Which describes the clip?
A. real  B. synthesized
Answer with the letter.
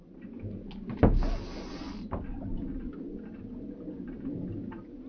A